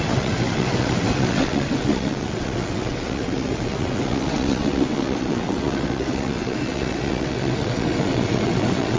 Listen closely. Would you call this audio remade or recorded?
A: remade